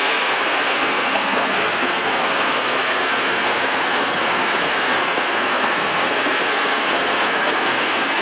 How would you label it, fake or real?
fake